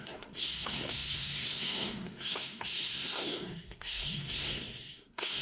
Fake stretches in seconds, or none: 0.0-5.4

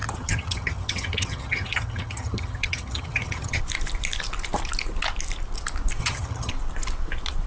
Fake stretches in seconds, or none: 0.0-3.6; 6.0-6.5

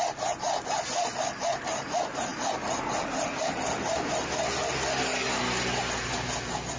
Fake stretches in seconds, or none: none

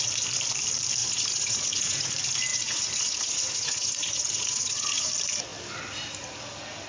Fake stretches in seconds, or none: 1.0-2.1; 2.5-5.1

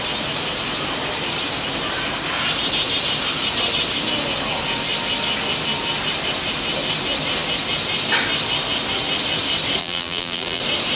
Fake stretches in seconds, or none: 9.8-10.6